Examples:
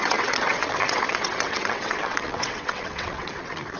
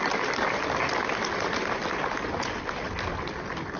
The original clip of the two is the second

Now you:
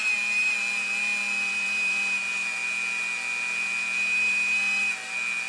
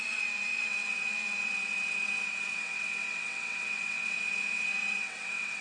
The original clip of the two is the first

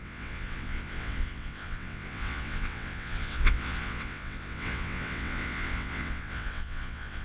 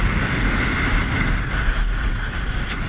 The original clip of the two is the second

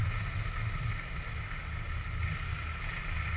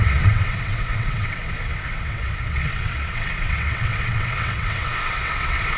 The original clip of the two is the first